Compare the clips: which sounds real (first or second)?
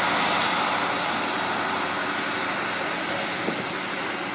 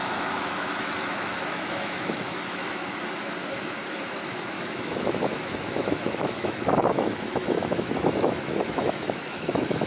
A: first